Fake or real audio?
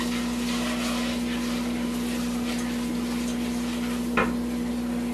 real